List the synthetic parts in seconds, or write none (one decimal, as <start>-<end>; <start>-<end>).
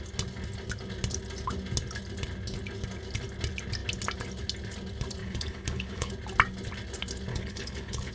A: 5.2-6.1; 7.3-8.1